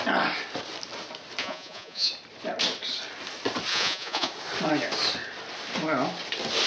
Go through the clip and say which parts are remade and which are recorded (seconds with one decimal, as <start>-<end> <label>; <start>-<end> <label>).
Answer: 0.0-1.4 recorded; 1.4-2.1 remade; 2.1-3.7 recorded; 3.7-4.3 remade; 4.3-6.7 recorded